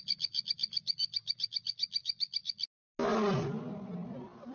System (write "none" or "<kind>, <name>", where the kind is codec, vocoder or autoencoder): none